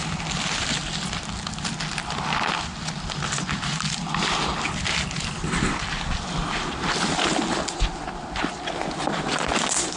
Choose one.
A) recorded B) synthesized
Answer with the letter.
A